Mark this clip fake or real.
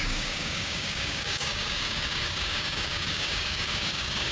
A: fake